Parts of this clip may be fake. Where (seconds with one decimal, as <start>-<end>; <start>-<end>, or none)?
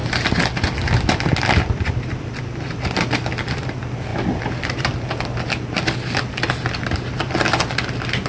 0.0-3.3